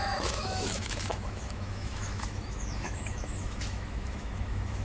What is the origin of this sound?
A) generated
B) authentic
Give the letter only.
A